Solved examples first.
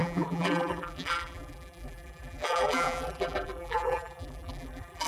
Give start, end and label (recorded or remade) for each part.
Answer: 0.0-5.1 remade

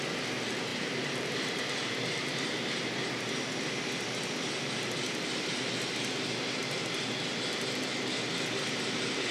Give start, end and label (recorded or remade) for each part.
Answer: 0.0-0.7 recorded; 0.7-3.0 remade; 3.0-9.3 recorded

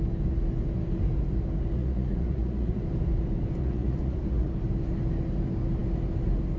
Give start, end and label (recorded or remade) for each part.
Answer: 0.0-1.8 recorded; 1.8-2.8 remade; 2.8-3.6 recorded; 3.6-4.5 remade; 4.5-6.6 recorded

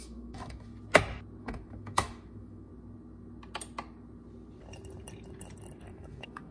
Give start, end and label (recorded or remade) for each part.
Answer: 0.0-0.7 remade; 0.7-1.4 recorded; 1.4-2.7 remade; 2.7-5.9 recorded; 5.9-6.5 remade

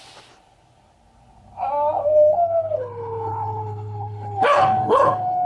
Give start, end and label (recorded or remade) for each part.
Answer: 0.0-2.1 recorded; 2.1-5.5 remade

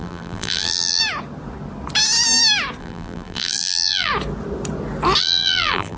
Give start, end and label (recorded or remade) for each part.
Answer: 0.0-1.0 remade; 1.0-2.8 recorded; 2.8-4.1 remade; 4.1-5.2 recorded; 5.2-6.0 remade

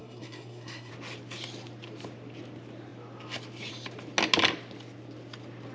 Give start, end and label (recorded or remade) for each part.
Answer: 0.0-0.9 remade; 0.9-5.7 recorded

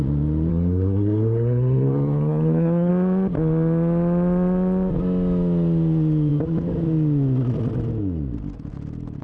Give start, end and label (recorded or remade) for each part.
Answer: 0.0-0.5 recorded; 0.5-2.9 remade; 2.9-9.2 recorded